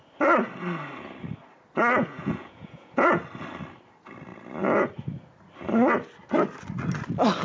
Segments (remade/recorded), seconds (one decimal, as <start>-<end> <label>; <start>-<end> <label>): 0.0-2.0 recorded; 2.0-3.2 remade; 3.2-7.4 recorded